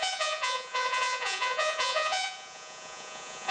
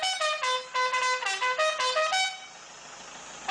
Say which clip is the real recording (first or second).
second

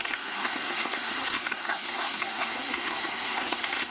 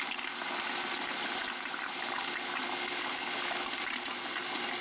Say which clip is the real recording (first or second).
second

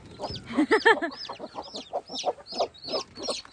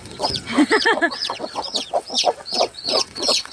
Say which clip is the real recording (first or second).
first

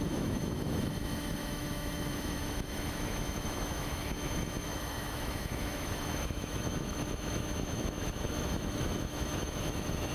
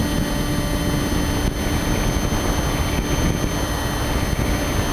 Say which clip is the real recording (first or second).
second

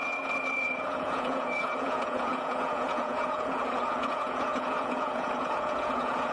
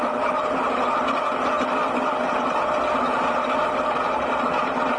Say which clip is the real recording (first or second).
second